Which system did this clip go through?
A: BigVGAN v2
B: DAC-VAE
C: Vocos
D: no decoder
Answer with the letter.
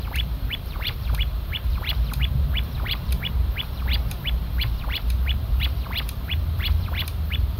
A